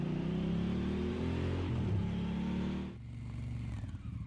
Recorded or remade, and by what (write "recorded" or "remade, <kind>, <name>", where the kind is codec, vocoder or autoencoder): remade, vocoder, BigVGAN v2